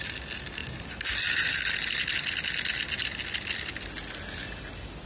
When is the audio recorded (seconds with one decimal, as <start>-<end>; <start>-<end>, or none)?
0.0-5.1